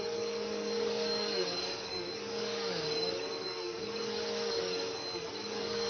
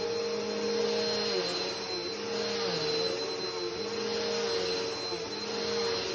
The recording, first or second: second